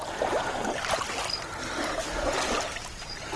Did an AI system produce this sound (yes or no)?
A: no